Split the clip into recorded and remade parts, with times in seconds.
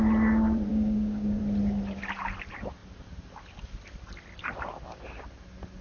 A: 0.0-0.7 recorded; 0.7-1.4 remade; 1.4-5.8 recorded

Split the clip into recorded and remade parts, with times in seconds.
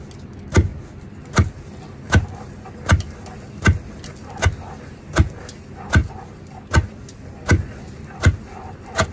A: 0.0-9.1 recorded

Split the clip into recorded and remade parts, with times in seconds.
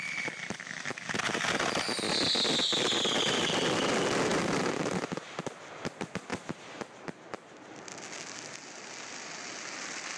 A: 0.0-10.2 recorded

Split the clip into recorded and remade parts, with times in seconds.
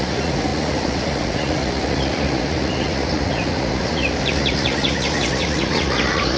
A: 0.0-6.4 remade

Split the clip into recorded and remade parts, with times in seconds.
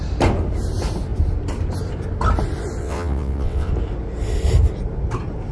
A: 0.0-2.8 recorded; 2.8-3.7 remade; 3.7-5.5 recorded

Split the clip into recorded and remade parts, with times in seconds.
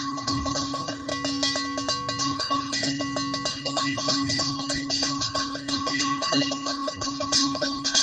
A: 0.0-1.1 remade; 1.1-2.2 recorded; 2.2-3.0 remade; 3.0-3.5 recorded; 3.5-8.0 remade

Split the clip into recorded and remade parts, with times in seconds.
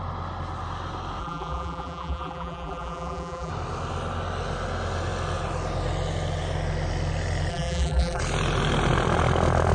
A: 0.0-1.2 recorded; 1.2-3.5 remade; 3.5-7.5 recorded; 7.5-8.2 remade; 8.2-9.7 recorded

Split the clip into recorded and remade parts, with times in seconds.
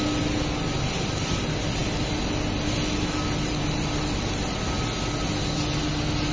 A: 0.0-6.3 recorded